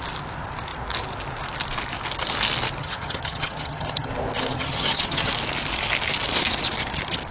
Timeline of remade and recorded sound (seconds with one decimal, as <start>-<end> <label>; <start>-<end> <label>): 0.0-2.8 recorded; 2.8-4.1 remade; 4.1-4.5 recorded; 4.5-5.3 remade; 5.3-7.3 recorded